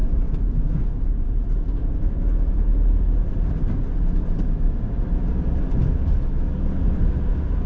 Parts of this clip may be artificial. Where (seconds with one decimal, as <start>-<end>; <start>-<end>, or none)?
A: none